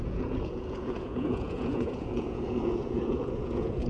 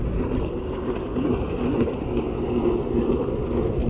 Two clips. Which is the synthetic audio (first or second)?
first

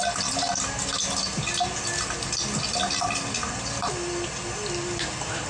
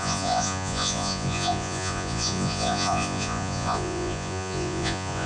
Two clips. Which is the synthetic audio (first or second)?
second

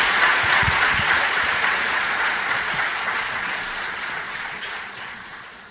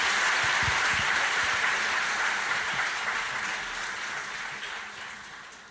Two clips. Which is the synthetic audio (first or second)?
first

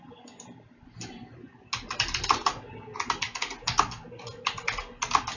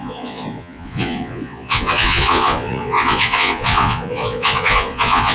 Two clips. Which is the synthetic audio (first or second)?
second